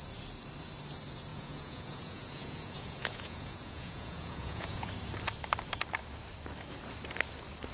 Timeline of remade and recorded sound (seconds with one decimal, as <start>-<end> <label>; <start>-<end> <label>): 0.0-1.3 recorded; 1.3-4.9 remade; 4.9-7.7 recorded